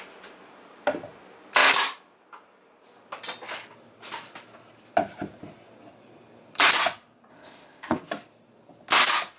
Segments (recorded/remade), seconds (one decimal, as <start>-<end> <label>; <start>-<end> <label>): 0.0-7.3 recorded; 7.3-8.0 remade; 8.0-9.4 recorded